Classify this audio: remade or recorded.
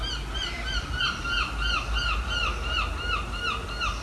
recorded